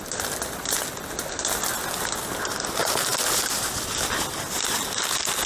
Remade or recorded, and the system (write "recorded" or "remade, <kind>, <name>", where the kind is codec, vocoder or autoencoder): recorded